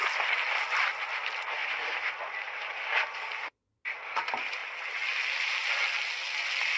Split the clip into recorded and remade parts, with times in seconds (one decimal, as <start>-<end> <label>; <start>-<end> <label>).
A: 0.0-6.8 recorded